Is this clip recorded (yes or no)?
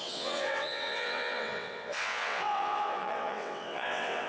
no